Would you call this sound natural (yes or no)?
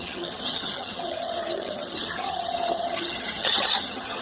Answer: no